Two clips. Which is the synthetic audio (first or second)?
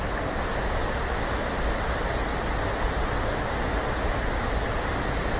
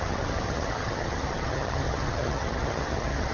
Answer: second